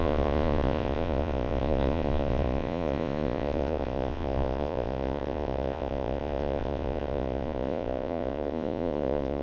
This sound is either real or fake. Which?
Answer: fake